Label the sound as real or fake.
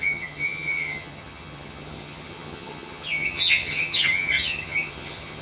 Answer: fake